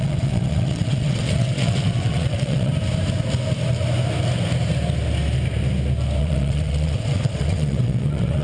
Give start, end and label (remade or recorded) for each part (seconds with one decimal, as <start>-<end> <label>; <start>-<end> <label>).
0.0-2.7 remade; 2.7-6.2 recorded; 6.2-8.4 remade